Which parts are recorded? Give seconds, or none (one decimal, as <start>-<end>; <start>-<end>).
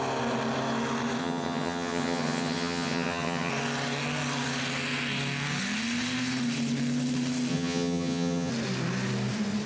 0.0-1.2; 3.5-7.5; 8.5-9.7